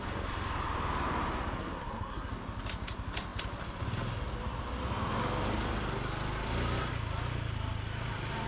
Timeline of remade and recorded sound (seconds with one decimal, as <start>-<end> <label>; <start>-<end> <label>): 0.0-1.6 recorded; 1.6-2.3 remade; 2.3-8.5 recorded